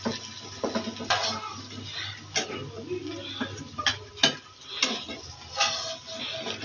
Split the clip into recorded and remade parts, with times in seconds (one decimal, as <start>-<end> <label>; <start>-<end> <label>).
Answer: 0.0-6.6 recorded